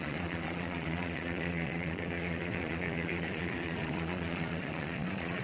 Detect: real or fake fake